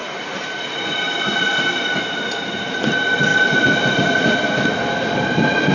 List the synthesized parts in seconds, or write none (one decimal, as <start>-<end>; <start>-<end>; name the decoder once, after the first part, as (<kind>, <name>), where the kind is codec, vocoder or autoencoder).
0.0-5.7 (vocoder, BigVGAN v2)